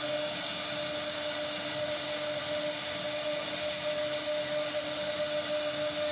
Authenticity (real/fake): real